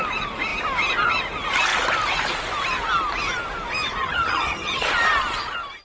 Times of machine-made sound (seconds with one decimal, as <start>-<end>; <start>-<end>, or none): 4.0-4.8